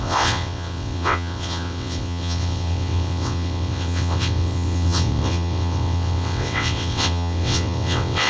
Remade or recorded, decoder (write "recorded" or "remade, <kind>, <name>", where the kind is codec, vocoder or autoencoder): remade, vocoder, WaveNeXt